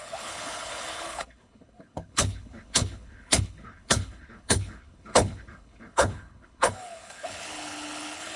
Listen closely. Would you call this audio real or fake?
fake